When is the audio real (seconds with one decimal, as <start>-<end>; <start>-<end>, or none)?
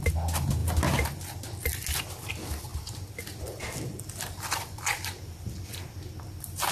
0.0-6.7